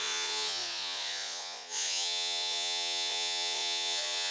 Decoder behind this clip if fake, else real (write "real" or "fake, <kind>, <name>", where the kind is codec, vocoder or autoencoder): fake, vocoder, Vocos